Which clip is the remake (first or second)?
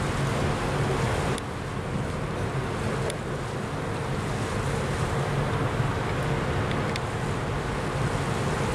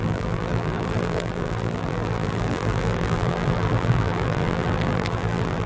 second